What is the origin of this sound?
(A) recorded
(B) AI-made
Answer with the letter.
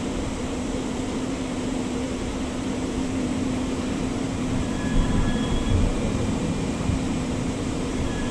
B